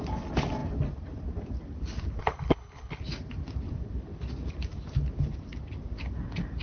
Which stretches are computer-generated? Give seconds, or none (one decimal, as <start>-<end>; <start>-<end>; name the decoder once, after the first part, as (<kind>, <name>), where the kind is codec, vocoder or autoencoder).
2.2-3.0 (codec, HILCodec)